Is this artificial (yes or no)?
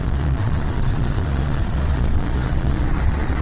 yes